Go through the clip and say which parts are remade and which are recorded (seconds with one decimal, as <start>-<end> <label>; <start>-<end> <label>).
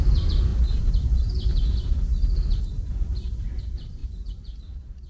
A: 0.0-0.5 recorded; 0.5-3.6 remade; 3.6-4.0 recorded; 4.0-5.1 remade